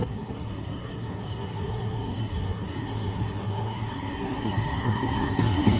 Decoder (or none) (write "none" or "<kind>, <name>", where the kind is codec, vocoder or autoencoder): codec, SNAC